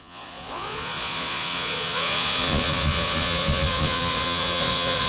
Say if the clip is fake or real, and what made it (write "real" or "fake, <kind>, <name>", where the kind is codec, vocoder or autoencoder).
fake, vocoder, Vocos